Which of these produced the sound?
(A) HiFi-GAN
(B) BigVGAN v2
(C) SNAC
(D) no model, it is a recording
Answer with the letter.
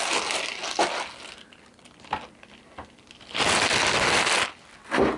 D